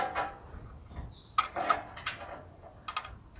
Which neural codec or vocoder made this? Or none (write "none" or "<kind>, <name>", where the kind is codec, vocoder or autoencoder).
none